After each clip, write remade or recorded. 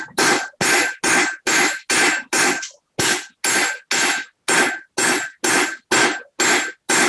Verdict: recorded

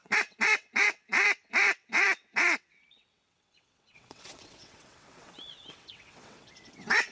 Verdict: remade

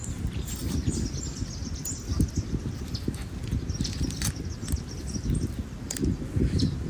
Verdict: recorded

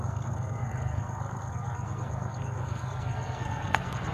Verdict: remade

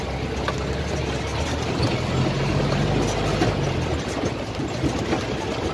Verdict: recorded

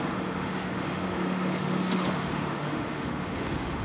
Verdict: remade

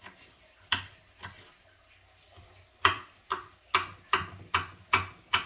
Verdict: recorded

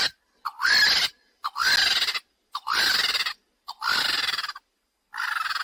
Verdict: recorded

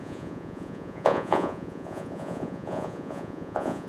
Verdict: remade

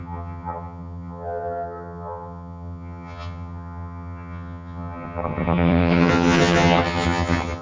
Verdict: remade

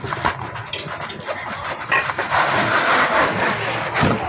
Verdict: recorded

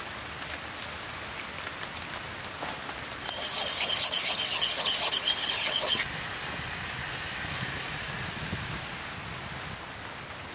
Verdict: recorded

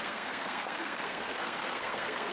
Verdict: remade